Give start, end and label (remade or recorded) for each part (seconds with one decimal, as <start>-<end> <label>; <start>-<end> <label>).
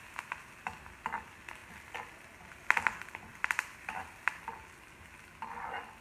0.0-6.0 recorded